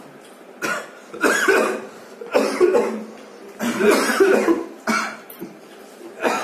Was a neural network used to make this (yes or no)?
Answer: no